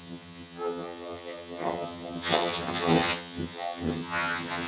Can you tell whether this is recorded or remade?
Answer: remade